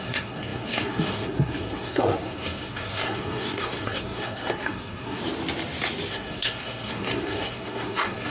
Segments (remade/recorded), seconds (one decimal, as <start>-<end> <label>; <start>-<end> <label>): 0.0-5.2 remade; 5.2-6.1 recorded; 6.1-8.3 remade